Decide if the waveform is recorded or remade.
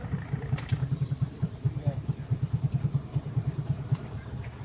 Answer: remade